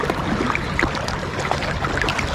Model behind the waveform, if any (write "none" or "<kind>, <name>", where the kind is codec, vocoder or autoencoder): none